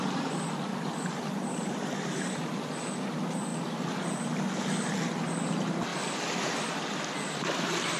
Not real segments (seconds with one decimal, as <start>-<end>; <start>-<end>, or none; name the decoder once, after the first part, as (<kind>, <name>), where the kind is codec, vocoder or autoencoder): 0.7-2.7 (vocoder, BigVGAN v2); 5.9-8.0